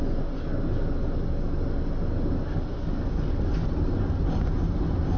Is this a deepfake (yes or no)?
no